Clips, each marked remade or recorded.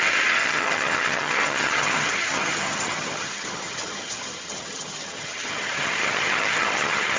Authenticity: remade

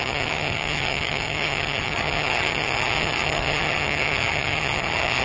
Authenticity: remade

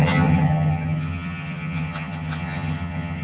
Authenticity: remade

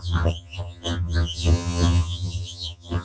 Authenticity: remade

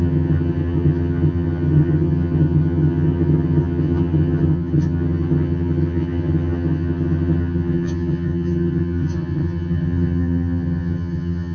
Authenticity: remade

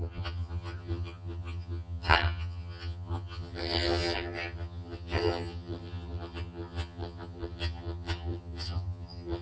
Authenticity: remade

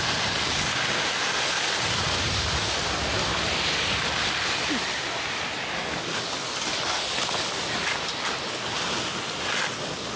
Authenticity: recorded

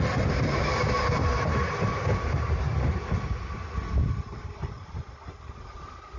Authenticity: recorded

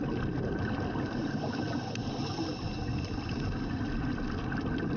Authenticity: recorded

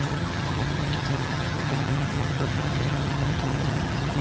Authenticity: remade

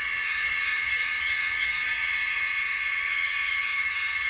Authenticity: remade